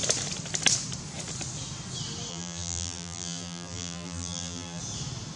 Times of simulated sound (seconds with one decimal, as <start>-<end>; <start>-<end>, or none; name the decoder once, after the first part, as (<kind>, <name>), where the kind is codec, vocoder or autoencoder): 2.3-4.8 (vocoder, BigVGAN v2)